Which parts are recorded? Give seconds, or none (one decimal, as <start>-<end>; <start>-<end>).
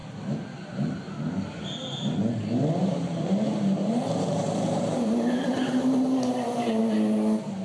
0.0-2.8; 6.8-7.6